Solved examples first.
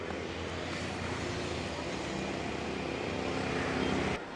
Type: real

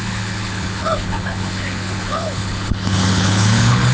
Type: fake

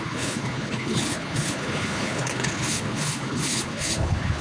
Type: fake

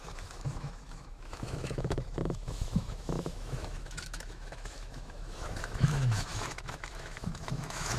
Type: fake